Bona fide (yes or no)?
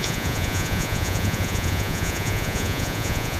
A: no